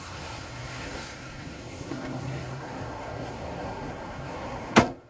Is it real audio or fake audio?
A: fake